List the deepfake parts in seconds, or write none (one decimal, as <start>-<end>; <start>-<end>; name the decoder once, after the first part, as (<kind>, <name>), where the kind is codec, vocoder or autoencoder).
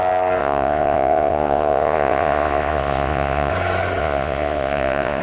0.4-3.5 (vocoder, Vocos); 4.0-5.2